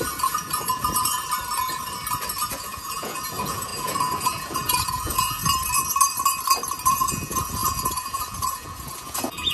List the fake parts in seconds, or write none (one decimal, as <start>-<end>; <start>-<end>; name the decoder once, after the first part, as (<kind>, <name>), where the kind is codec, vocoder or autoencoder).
0.0-1.2 (vocoder, Vocos); 2.5-5.4; 6.9-9.5